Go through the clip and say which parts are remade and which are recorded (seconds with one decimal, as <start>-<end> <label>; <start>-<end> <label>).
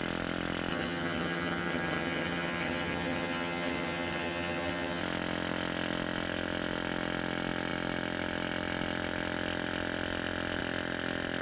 0.0-0.7 recorded; 0.7-5.0 remade; 5.0-11.4 recorded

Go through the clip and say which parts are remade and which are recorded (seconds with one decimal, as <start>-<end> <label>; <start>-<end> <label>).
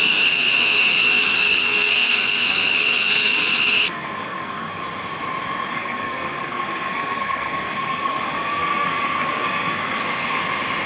0.0-4.8 remade; 4.8-5.7 recorded; 5.7-10.4 remade; 10.4-10.9 recorded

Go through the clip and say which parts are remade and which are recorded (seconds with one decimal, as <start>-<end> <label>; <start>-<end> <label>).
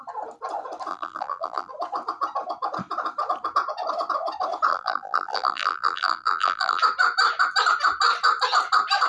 0.0-0.9 recorded; 0.9-1.7 remade; 1.7-4.7 recorded; 4.7-6.8 remade; 6.8-9.1 recorded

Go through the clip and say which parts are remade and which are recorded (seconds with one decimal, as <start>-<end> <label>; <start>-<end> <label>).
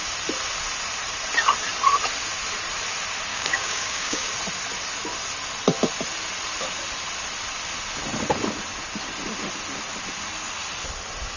0.0-3.3 recorded; 3.3-4.3 remade; 4.3-11.4 recorded